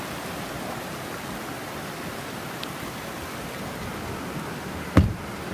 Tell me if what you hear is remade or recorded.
recorded